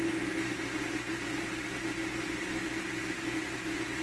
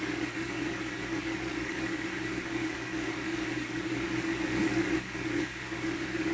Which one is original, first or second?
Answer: first